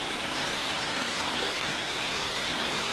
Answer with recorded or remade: remade